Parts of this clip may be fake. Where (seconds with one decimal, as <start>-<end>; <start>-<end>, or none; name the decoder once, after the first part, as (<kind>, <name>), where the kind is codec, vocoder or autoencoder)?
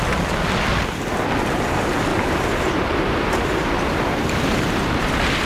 2.1-5.5 (vocoder, BigVGAN v2)